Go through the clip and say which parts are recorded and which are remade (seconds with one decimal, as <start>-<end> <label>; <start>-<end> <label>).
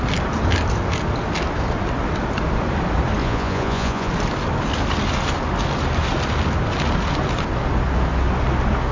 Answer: 0.0-3.2 recorded; 3.2-4.1 remade; 4.1-8.9 recorded